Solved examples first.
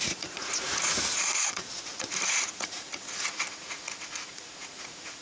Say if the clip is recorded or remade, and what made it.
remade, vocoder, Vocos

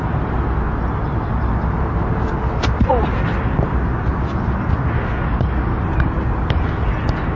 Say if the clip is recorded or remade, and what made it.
recorded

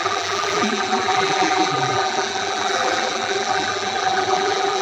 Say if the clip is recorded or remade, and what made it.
remade, vocoder, BigVGAN v2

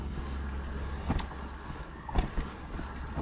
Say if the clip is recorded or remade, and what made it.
recorded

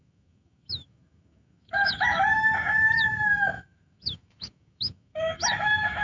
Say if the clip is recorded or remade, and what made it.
remade, autoencoder, DAC-VAE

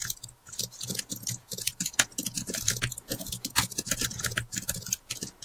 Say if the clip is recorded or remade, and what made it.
remade, vocoder, Vocos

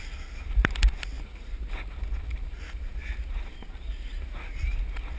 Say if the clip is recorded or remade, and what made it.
recorded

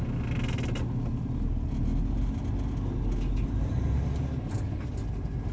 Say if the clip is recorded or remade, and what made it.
recorded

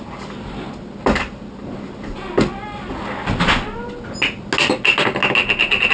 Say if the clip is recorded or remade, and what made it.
recorded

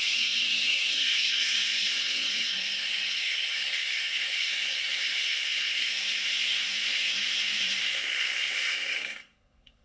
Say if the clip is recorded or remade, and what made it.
remade, codec, SNAC